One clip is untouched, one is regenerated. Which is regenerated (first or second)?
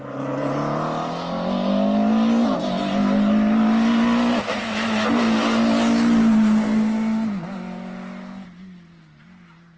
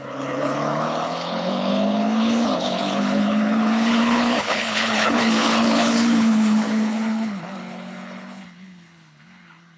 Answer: second